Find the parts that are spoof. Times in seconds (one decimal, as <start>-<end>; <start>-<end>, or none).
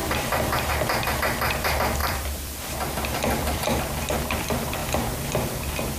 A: 0.0-4.8